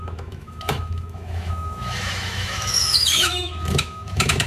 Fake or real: fake